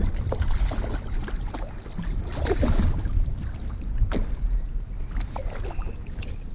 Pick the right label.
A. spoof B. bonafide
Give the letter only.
B